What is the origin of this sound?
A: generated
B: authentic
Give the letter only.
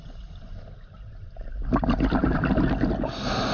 B